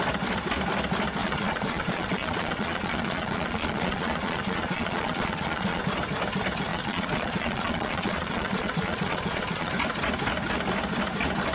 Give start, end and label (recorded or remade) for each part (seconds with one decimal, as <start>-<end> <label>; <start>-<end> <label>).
0.0-1.2 recorded; 1.2-5.8 remade; 5.8-6.7 recorded; 6.7-9.7 remade; 9.7-11.5 recorded